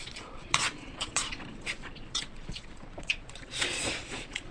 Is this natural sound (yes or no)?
no